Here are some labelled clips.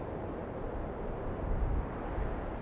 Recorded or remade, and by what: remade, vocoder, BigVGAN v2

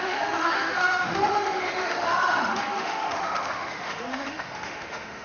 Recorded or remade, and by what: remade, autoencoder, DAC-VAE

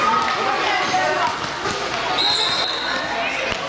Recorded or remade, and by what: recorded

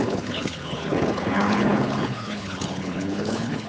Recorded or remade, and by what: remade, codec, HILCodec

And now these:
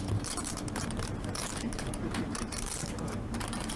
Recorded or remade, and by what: remade, vocoder, BigVGAN v2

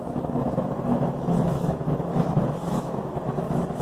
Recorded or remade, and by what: remade, autoencoder, DAC-VAE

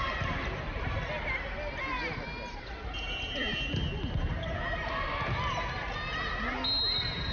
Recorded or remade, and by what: recorded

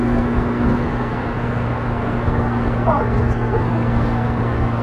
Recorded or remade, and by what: remade, codec, SNAC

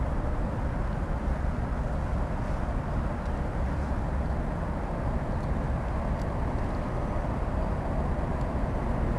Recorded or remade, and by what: recorded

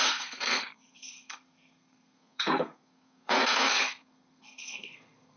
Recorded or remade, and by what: remade, codec, SNAC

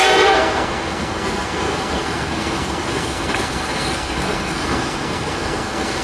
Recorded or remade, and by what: remade, codec, SNAC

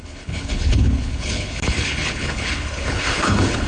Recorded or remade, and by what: remade, codec, HILCodec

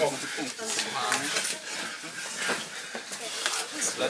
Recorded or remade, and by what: recorded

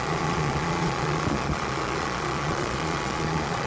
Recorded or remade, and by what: remade, vocoder, Vocos